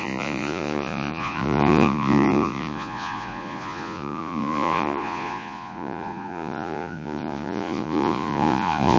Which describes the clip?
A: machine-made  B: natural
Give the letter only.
A